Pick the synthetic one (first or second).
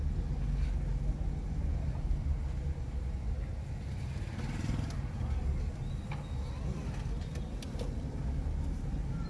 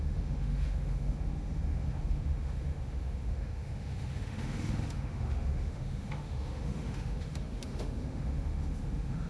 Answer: second